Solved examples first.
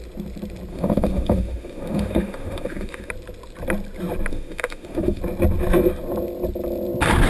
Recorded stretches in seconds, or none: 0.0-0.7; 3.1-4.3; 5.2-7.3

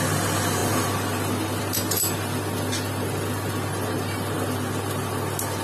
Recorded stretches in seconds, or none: 0.0-5.6

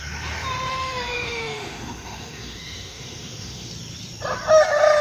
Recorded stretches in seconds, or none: 0.0-0.7; 3.7-5.0

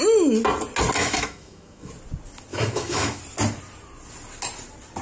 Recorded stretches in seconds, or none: 0.0-1.0; 1.9-2.5; 3.2-5.0

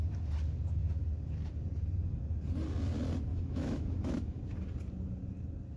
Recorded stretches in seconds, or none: 0.0-3.3; 4.4-5.8